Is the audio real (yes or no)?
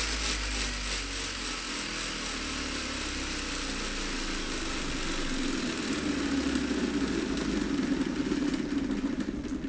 yes